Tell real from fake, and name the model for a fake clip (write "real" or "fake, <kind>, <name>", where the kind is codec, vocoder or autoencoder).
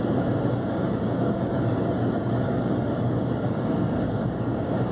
fake, codec, DAC